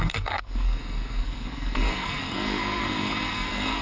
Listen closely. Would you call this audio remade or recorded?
remade